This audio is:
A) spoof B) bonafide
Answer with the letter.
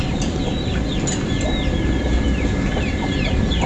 B